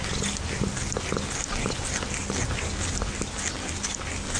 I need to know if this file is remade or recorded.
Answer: recorded